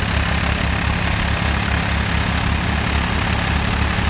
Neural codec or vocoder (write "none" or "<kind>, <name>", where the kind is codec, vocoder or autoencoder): none